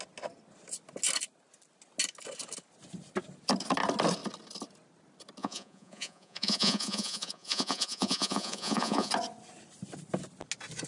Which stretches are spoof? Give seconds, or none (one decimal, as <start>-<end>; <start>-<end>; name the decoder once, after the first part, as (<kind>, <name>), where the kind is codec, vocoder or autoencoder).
5.4-9.1 (vocoder, Vocos)

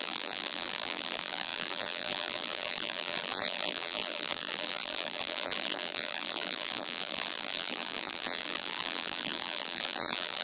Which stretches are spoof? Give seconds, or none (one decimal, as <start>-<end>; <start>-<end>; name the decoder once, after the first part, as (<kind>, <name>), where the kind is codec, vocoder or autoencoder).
0.0-10.4 (vocoder, BigVGAN v2)

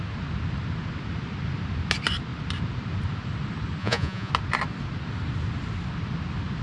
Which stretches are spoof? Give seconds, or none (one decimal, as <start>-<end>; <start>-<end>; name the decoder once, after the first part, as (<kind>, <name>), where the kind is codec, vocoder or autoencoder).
3.8-4.3 (vocoder, Vocos)

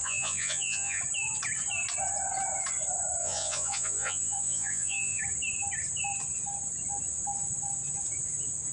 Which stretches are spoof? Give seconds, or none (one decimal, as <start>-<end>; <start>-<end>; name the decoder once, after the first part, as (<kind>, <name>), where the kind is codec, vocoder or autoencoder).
0.0-1.0 (vocoder, Vocos); 3.2-5.2

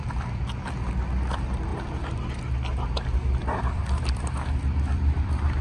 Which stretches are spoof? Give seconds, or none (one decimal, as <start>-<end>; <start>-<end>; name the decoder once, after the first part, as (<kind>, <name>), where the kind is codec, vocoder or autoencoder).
1.7-2.3 (vocoder, BigVGAN v2); 3.4-5.6

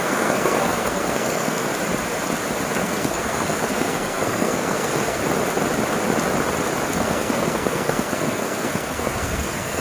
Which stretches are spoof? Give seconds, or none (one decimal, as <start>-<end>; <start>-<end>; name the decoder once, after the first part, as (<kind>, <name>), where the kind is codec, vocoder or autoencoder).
0.0-1.7 (codec, SNAC); 2.7-5.2; 6.9-9.8

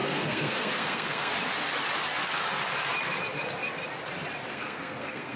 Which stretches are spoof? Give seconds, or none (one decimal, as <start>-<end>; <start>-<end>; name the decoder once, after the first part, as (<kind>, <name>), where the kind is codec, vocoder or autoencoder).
0.0-1.3 (codec, SNAC); 4.5-5.4